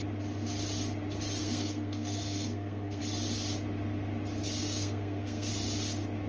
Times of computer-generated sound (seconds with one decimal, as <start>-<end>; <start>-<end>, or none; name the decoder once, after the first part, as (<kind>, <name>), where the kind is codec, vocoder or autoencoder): 1.4-3.0 (codec, SNAC); 4.6-5.5